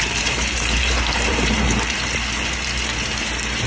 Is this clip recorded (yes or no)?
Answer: no